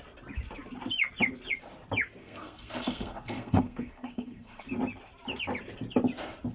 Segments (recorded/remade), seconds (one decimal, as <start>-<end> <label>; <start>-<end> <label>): 0.0-2.2 recorded; 2.2-4.6 remade; 4.6-6.5 recorded

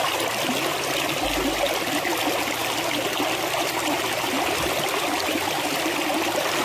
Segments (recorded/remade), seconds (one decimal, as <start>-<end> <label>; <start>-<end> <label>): 0.0-6.6 recorded

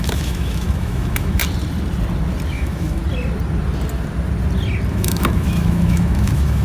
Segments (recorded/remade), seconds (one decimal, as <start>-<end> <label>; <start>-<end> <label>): 0.0-1.4 remade; 1.4-2.5 recorded; 2.5-3.0 remade; 3.0-4.9 recorded; 4.9-6.6 remade

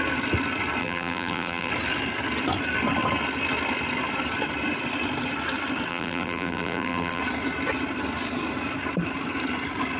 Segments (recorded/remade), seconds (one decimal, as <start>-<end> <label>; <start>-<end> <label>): 0.0-0.8 recorded; 0.8-1.7 remade; 1.7-5.9 recorded; 5.9-7.2 remade; 7.2-10.0 recorded

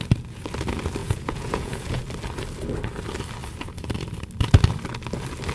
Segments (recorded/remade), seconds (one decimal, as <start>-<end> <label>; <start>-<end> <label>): 0.0-1.0 recorded; 1.0-2.0 remade; 2.0-5.5 recorded